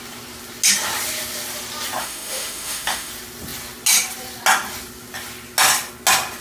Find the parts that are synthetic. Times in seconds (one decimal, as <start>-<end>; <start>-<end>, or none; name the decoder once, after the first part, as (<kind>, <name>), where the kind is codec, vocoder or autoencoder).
2.0-3.1 (autoencoder, DAC-VAE)